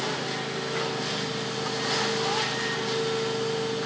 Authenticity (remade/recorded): recorded